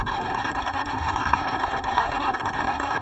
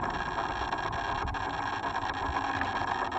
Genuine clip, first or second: second